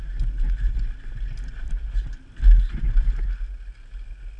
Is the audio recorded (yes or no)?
yes